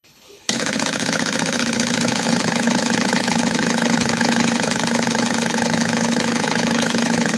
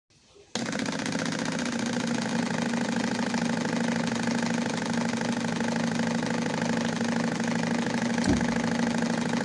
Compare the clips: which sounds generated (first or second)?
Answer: first